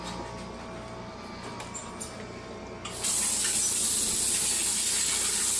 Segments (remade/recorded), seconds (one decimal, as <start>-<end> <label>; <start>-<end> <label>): 0.0-5.6 recorded